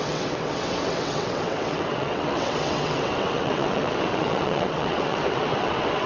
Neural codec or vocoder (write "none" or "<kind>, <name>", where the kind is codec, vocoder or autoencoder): vocoder, WaveNeXt